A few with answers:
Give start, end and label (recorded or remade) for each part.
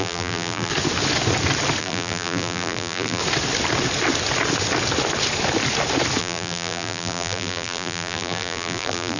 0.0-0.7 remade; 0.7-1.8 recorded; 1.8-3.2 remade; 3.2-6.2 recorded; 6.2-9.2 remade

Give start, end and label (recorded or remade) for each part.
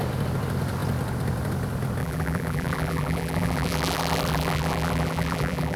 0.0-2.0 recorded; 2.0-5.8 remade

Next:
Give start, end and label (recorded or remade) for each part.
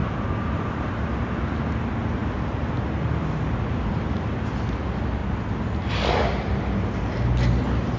0.0-8.0 recorded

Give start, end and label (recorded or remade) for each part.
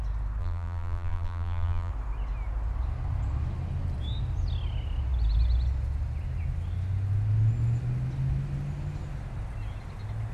0.0-0.4 recorded; 0.4-1.9 remade; 1.9-10.3 recorded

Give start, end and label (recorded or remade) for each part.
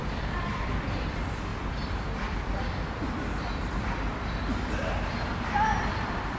0.0-6.4 remade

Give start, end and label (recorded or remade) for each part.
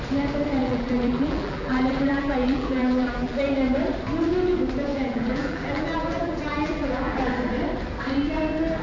0.0-0.6 recorded; 0.6-3.4 remade; 3.4-4.9 recorded; 4.9-7.3 remade; 7.3-8.8 recorded